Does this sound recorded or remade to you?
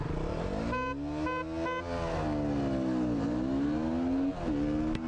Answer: recorded